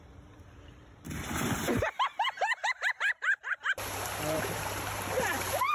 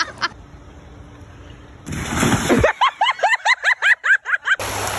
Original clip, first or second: second